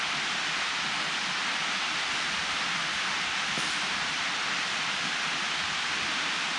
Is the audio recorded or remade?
recorded